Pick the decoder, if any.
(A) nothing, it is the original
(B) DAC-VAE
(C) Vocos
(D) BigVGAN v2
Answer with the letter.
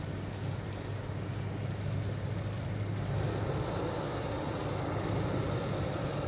A